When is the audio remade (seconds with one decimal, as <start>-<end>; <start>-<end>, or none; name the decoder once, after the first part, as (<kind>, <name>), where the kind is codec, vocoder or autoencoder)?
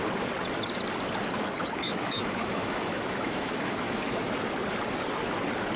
1.6-4.2 (autoencoder, DAC-VAE)